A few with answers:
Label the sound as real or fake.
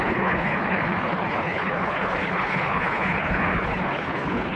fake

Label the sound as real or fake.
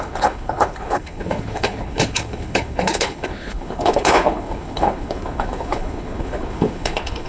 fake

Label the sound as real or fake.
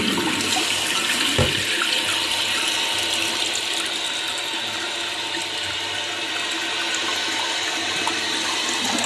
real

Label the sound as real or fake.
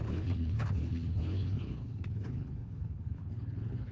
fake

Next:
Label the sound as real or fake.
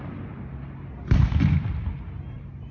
real